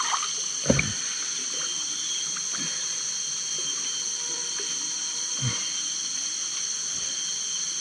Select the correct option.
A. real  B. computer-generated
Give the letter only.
A